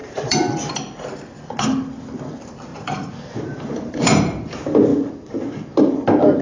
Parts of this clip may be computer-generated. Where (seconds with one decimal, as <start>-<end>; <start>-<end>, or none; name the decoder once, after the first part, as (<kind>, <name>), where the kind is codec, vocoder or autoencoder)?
0.0-0.7 (vocoder, BigVGAN v2); 2.7-4.5